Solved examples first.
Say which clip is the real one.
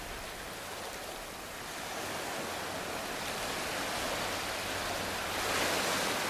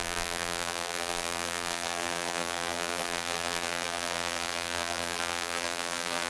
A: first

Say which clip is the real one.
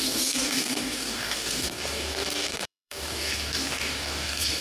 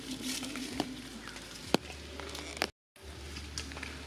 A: second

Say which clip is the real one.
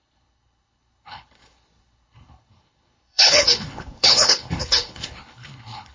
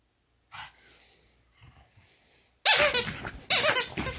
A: second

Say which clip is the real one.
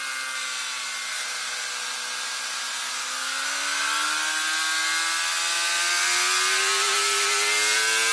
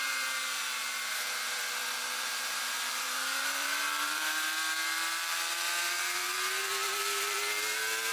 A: first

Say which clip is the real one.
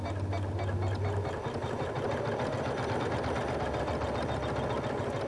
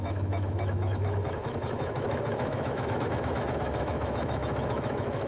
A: first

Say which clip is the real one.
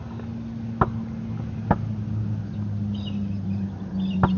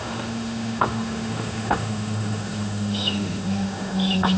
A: first